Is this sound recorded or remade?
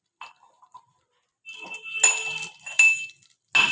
recorded